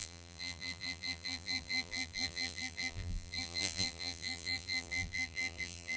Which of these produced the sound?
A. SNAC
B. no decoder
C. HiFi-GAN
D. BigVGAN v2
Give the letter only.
D